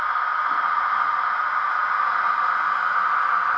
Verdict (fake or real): real